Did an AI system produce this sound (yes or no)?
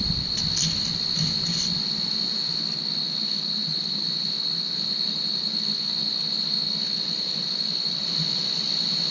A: no